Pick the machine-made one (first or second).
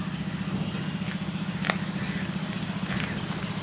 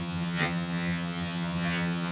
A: second